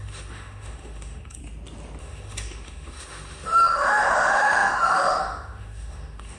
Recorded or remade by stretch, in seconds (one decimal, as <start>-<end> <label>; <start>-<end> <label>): 0.0-1.4 remade; 1.4-2.0 recorded; 2.0-6.4 remade